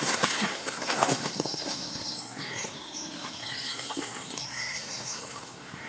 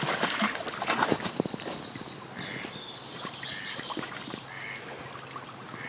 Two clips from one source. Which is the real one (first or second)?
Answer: second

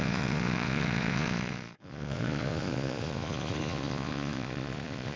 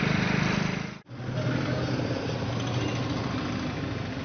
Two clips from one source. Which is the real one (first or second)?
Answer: second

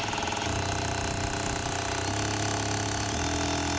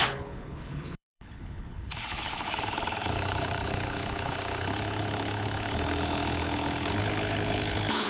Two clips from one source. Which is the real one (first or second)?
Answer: first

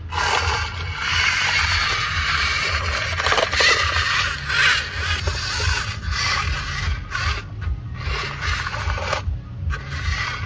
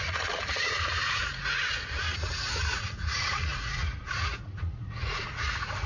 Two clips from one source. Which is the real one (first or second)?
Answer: first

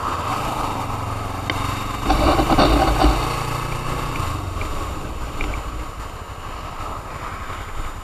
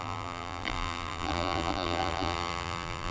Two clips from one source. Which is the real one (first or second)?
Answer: first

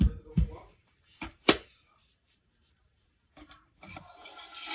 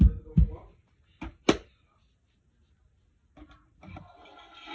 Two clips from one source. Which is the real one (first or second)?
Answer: second